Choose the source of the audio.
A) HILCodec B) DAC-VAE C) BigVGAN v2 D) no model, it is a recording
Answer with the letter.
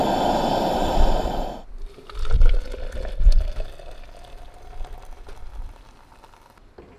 D